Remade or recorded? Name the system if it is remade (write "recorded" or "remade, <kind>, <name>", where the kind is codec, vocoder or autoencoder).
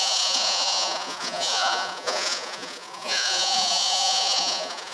remade, vocoder, Vocos